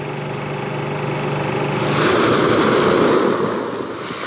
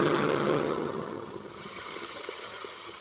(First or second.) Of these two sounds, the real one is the first